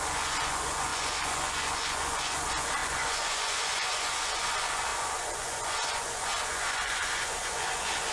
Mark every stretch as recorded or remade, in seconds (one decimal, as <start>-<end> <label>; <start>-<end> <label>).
0.0-8.1 remade